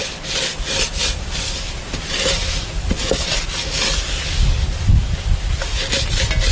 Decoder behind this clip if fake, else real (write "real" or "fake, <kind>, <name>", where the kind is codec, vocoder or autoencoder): real